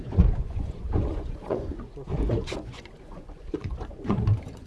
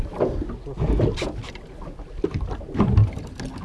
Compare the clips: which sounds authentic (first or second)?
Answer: second